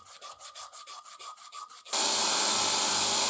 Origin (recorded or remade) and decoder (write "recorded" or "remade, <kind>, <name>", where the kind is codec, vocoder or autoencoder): recorded